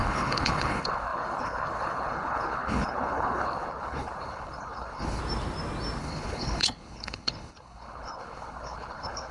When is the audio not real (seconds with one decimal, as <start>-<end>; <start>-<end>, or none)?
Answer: 0.0-5.2; 6.0-9.3